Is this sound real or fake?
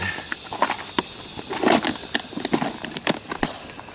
real